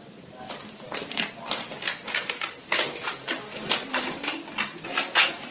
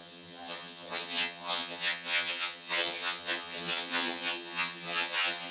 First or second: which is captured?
first